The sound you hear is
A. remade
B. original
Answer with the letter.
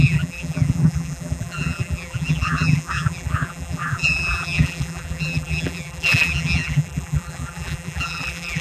A